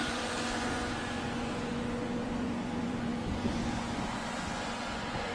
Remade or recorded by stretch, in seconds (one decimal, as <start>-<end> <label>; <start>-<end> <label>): 0.0-5.3 remade